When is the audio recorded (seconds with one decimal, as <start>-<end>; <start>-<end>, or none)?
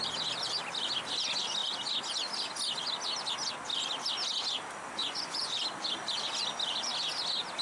0.0-5.0; 5.6-7.6